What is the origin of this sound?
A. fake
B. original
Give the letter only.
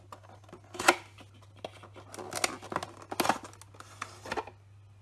B